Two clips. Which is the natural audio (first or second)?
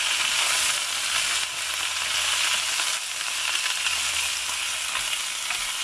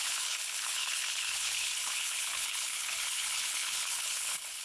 first